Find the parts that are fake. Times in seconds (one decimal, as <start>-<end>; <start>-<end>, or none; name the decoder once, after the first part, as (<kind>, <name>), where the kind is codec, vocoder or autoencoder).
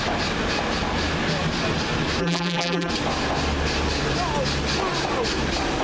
2.2-2.9 (vocoder, BigVGAN v2)